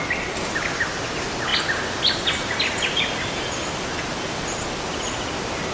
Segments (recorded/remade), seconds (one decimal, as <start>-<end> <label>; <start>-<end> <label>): 0.0-5.7 recorded